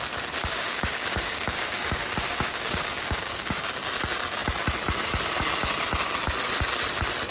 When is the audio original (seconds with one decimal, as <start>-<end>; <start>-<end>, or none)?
0.0-0.4; 3.6-7.3